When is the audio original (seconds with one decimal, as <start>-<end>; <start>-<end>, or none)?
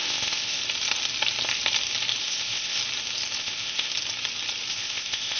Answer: 0.6-2.2; 2.8-3.4; 3.9-4.7